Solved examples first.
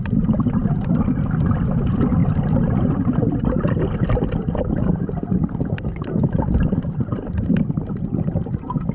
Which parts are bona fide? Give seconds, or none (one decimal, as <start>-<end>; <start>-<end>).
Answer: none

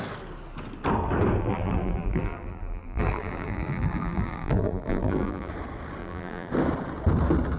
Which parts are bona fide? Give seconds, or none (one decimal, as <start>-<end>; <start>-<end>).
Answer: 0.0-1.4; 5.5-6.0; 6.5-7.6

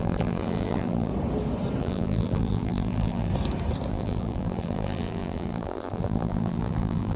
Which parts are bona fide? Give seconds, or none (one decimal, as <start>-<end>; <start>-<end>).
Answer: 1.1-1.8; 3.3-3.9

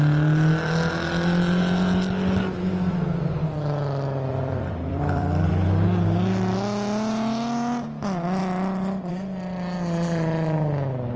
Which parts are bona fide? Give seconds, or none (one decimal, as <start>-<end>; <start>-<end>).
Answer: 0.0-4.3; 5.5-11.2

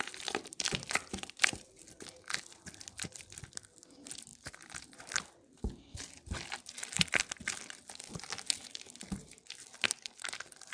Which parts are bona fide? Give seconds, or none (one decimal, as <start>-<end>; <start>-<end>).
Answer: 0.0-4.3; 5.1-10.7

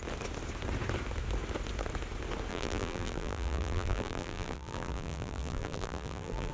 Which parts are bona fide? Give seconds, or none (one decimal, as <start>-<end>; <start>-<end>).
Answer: 0.0-2.5